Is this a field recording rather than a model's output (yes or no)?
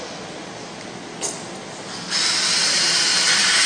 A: yes